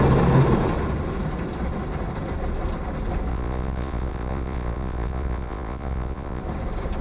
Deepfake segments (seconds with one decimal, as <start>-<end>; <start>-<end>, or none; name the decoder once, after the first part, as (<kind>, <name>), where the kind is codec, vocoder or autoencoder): 3.3-6.4 (vocoder, Vocos)